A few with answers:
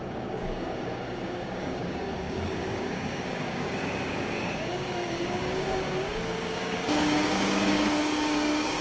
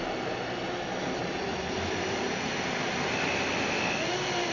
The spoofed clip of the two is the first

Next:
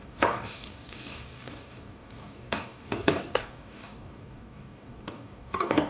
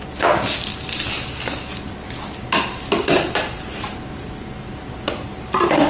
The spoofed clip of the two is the first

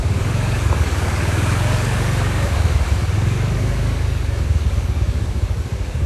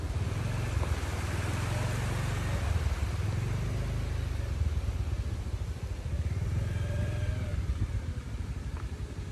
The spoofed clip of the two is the first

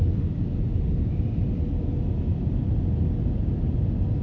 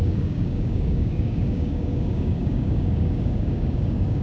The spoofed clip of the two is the second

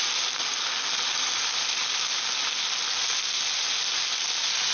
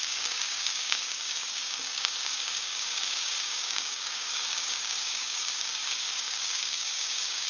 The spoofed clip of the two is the second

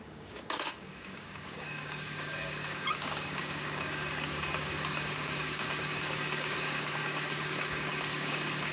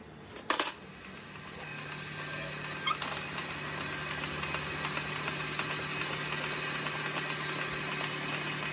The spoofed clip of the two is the first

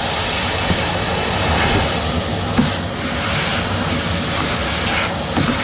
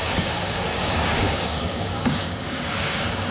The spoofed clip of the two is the second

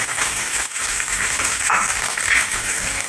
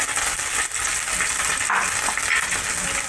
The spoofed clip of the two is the first